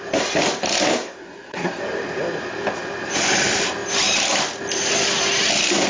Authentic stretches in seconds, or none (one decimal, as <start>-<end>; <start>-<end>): 0.0-1.2; 1.8-5.9